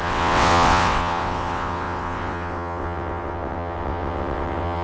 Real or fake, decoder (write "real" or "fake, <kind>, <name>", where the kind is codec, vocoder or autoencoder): fake, vocoder, WaveNeXt